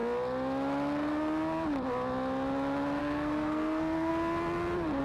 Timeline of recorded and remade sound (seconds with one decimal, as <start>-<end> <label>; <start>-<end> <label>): 0.0-3.0 recorded; 3.0-4.1 remade; 4.1-5.0 recorded